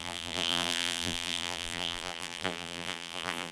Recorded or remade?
remade